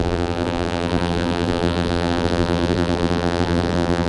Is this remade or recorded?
remade